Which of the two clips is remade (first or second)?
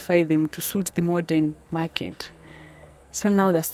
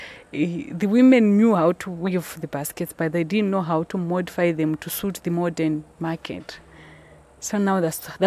first